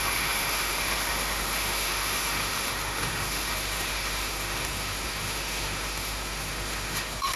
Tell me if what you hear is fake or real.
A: fake